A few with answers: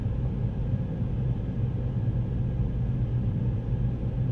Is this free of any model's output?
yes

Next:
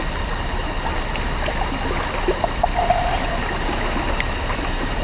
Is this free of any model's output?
yes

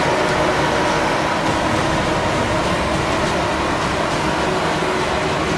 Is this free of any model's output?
yes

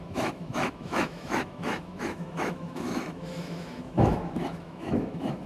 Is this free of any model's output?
no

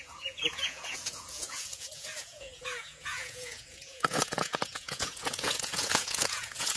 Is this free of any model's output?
no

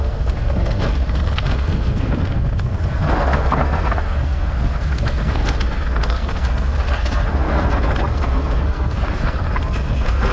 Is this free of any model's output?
no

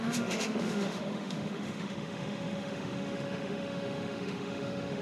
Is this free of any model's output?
no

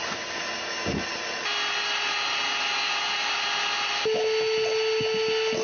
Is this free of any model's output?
yes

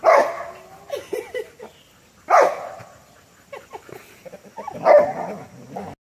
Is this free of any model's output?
yes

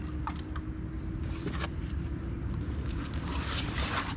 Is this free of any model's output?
yes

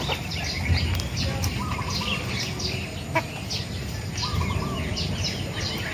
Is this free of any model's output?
yes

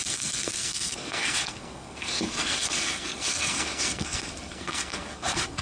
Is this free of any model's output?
no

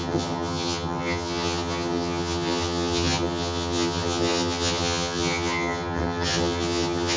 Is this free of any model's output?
no